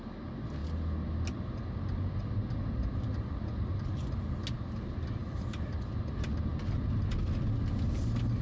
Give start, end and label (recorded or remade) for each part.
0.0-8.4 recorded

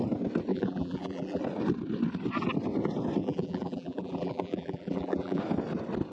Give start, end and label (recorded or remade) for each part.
0.0-0.5 recorded; 0.5-1.4 remade; 1.4-3.2 recorded; 3.2-5.4 remade; 5.4-6.1 recorded

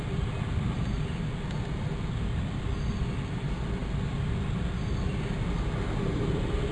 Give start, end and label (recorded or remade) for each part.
0.0-6.7 recorded

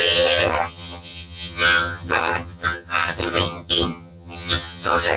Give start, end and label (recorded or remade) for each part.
0.0-5.2 remade